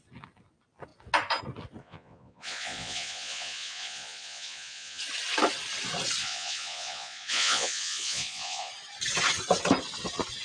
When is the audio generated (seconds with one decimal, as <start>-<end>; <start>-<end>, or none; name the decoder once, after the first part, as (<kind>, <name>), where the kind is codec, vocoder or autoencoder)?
1.8-5.0 (vocoder, Vocos); 6.2-8.7